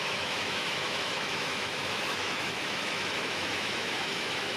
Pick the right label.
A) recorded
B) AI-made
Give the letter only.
B